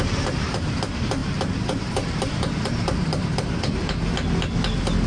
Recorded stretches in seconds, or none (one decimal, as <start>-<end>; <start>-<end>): 4.1-5.1